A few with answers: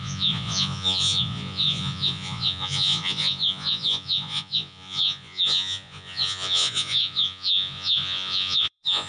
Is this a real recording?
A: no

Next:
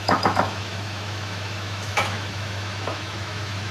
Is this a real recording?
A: no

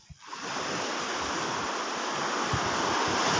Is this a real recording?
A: yes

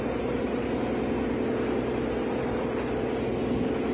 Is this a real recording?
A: yes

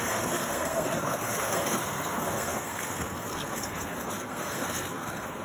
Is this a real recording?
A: no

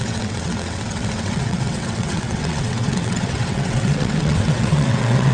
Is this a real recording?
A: no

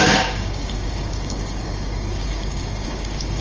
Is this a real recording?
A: no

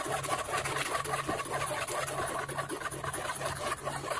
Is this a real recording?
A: yes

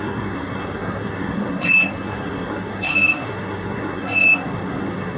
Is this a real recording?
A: no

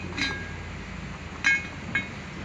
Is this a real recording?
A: yes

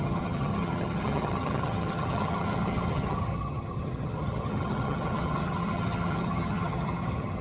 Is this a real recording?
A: no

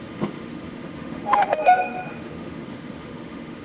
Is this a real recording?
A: no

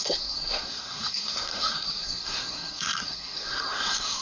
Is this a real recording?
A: no